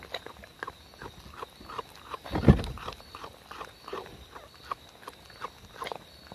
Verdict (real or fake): real